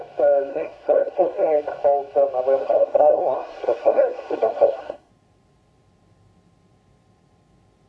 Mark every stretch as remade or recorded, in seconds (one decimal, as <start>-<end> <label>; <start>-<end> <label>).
0.0-0.5 recorded; 0.5-1.6 remade; 1.6-2.6 recorded; 2.6-5.1 remade; 5.1-7.9 recorded